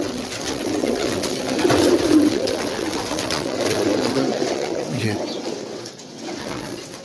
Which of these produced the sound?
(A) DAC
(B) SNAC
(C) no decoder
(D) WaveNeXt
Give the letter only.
D